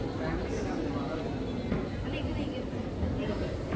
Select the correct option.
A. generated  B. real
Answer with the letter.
B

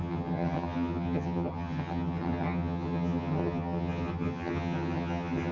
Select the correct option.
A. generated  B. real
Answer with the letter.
A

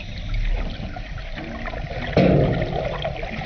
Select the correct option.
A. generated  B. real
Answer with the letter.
B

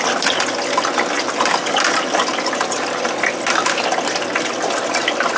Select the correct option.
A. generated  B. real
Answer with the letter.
B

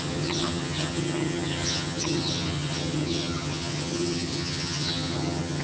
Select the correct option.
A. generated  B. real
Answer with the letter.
A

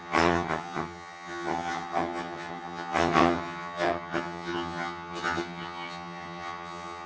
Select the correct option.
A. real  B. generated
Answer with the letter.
B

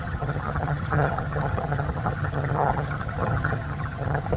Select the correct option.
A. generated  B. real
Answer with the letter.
A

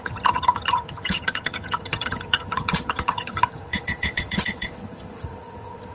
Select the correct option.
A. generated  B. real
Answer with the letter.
A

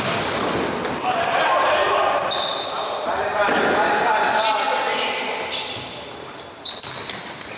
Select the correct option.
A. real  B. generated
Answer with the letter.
A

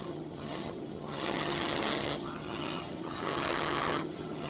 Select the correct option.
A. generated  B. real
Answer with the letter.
A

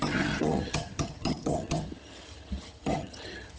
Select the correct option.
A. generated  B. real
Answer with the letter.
A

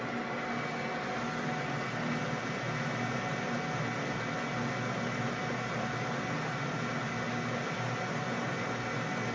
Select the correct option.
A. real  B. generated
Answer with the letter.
A